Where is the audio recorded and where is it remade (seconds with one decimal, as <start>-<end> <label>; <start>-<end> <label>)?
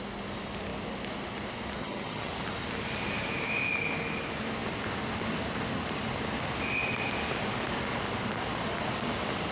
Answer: 0.0-1.8 recorded; 1.8-2.3 remade; 2.3-9.5 recorded